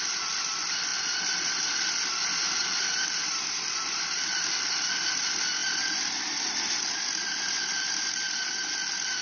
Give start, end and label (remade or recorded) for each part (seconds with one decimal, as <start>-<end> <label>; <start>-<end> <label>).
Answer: 0.0-9.2 recorded